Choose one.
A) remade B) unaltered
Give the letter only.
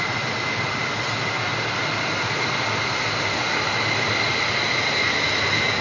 B